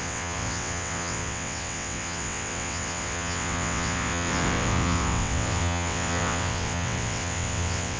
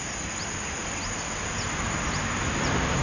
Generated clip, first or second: first